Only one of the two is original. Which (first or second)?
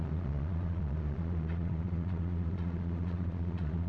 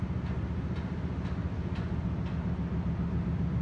second